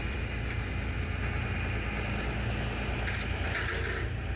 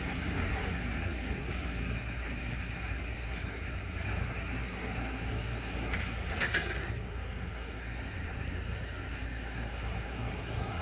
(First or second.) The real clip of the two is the first